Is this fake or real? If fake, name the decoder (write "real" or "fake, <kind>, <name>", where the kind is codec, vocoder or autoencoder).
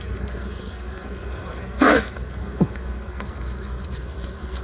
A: fake, codec, SNAC